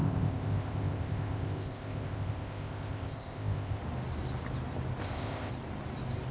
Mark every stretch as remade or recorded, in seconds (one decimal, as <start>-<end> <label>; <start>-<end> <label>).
0.0-3.8 remade; 3.8-5.0 recorded; 5.0-5.5 remade; 5.5-6.3 recorded